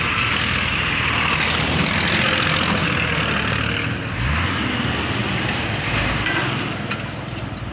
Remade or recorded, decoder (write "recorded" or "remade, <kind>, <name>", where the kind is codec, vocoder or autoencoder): recorded